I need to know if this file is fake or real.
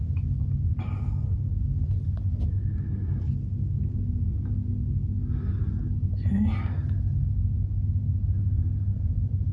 real